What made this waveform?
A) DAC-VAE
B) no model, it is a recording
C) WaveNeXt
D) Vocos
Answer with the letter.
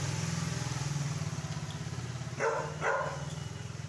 B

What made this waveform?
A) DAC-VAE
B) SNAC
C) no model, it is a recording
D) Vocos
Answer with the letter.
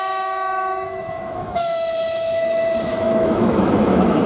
A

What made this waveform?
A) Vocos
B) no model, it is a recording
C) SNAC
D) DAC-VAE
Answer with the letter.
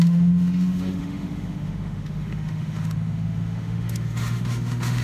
D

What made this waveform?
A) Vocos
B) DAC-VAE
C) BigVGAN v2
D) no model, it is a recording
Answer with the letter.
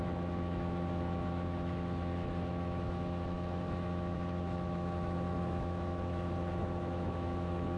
B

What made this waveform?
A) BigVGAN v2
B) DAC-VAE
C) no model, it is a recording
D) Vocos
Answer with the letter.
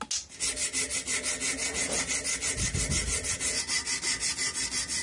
C